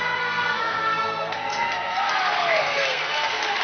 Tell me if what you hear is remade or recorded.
remade